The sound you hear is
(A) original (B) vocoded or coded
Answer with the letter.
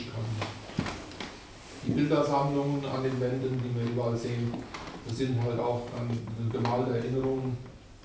A